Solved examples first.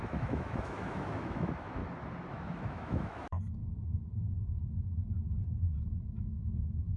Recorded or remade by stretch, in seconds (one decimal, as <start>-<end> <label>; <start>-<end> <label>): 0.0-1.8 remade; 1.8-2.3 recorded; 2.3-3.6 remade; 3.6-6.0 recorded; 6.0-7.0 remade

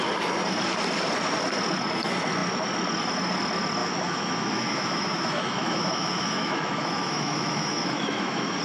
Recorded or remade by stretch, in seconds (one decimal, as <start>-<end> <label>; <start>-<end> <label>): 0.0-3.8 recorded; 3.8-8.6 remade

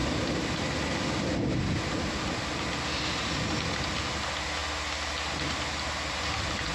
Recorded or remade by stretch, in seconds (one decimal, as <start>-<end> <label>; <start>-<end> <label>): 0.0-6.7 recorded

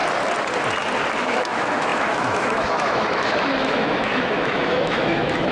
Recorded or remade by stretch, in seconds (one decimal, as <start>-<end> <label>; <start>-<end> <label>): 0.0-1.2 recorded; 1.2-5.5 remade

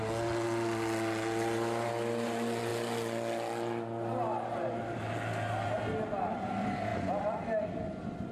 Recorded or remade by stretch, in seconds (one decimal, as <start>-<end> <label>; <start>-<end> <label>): 0.0-8.3 recorded

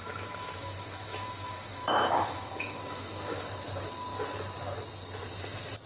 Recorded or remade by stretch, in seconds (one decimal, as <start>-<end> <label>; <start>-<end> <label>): 0.0-3.5 remade; 3.5-5.9 recorded

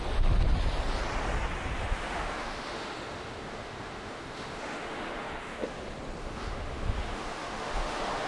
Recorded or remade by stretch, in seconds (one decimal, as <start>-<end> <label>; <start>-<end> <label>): 0.0-1.8 recorded; 1.8-5.8 remade; 5.8-6.2 recorded; 6.2-8.3 remade

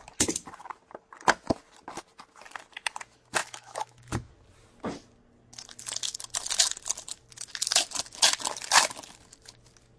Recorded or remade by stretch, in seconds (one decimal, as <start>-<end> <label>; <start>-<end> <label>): 0.0-3.4 recorded; 3.4-4.3 remade; 4.3-10.0 recorded